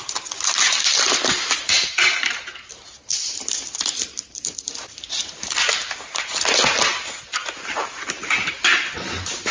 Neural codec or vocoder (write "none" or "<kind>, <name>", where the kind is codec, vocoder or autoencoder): vocoder, BigVGAN v2